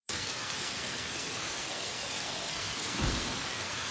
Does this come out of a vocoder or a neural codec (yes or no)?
yes